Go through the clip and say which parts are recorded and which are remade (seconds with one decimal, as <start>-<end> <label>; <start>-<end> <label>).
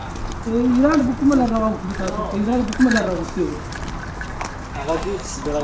0.0-5.6 recorded